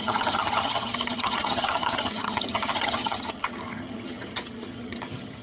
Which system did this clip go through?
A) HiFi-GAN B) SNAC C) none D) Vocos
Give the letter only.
A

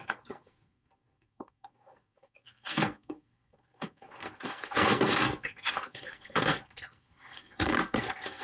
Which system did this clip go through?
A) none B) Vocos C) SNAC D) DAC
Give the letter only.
C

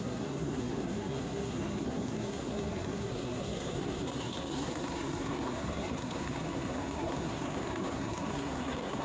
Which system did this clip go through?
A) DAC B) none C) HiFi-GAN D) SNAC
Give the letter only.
D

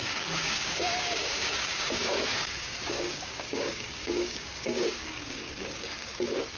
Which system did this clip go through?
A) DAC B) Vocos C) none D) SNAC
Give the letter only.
A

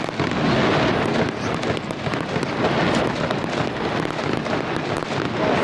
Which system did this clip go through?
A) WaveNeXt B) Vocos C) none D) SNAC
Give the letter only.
C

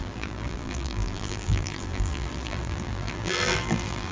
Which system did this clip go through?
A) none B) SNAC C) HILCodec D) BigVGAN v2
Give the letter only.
D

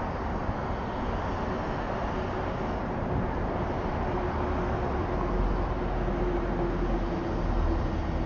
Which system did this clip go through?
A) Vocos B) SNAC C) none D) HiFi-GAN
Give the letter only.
C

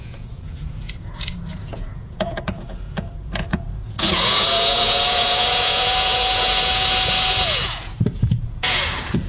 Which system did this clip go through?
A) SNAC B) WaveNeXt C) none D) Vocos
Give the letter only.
D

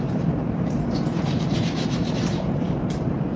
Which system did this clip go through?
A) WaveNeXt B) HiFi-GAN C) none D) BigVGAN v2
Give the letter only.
D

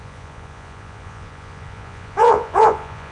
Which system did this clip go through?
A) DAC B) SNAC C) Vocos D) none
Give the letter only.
C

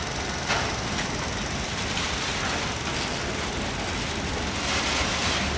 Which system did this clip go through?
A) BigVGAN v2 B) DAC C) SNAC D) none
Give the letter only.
D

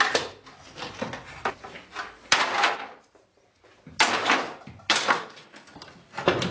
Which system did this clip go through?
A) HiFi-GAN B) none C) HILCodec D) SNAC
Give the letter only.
B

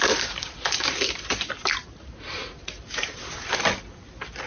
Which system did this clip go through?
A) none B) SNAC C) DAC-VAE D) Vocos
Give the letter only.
A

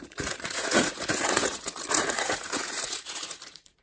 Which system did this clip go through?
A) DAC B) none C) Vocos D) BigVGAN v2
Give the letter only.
C